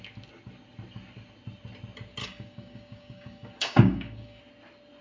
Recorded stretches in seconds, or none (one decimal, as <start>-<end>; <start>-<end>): 0.0-2.2; 4.4-5.0